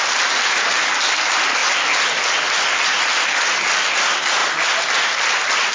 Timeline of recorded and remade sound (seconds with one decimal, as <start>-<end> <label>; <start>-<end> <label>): 0.0-5.7 recorded